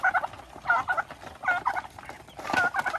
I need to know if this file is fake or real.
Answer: real